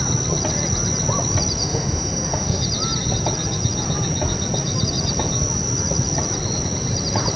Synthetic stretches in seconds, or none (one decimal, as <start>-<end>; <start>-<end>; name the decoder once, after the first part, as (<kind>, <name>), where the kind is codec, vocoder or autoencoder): 1.6-2.6 (autoencoder, DAC-VAE)